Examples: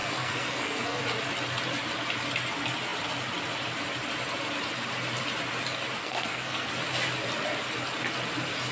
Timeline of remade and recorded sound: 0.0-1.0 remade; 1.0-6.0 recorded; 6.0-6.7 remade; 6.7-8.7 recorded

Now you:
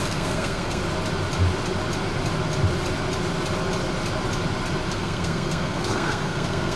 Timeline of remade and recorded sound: 0.0-0.8 remade; 0.8-4.9 recorded; 4.9-6.8 remade

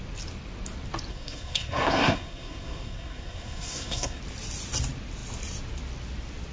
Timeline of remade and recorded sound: 0.0-1.1 recorded; 1.1-4.2 remade; 4.2-6.5 recorded

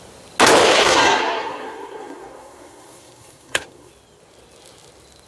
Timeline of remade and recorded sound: 0.0-0.8 recorded; 0.8-3.9 remade; 3.9-5.3 recorded

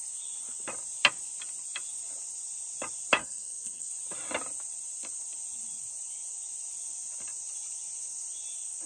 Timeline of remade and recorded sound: 0.0-3.2 recorded; 3.2-3.9 remade; 3.9-8.9 recorded